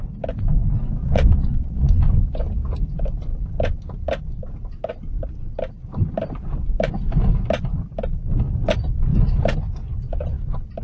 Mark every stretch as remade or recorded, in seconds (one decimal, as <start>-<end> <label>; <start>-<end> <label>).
0.0-1.0 recorded; 1.0-2.0 remade; 2.0-10.8 recorded